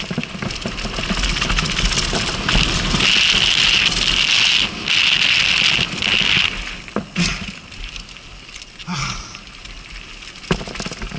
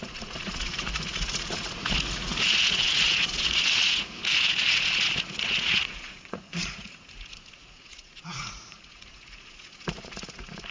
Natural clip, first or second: first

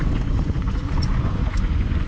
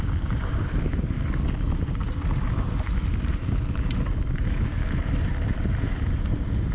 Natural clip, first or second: second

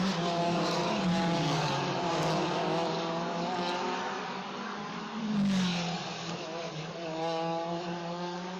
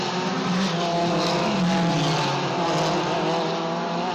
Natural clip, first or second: second